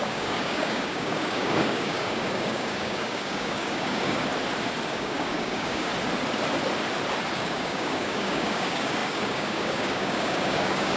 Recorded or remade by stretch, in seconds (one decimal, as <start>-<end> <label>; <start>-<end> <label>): 0.0-4.3 remade; 4.3-4.9 recorded; 4.9-5.9 remade; 5.9-7.3 recorded; 7.3-11.0 remade